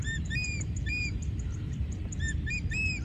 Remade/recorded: remade